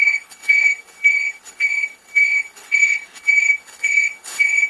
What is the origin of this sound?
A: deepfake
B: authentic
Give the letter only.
A